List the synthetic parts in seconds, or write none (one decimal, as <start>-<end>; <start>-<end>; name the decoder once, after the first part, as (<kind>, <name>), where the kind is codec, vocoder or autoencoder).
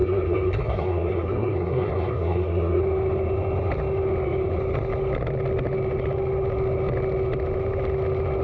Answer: 0.0-2.8 (codec, SNAC)